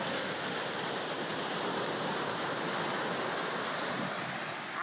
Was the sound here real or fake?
real